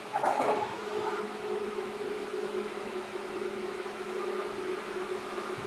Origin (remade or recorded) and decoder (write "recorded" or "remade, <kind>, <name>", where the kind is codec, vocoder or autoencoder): remade, autoencoder, DAC-VAE